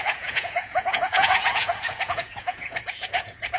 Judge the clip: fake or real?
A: fake